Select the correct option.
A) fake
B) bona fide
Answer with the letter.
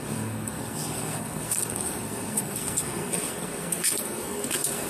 A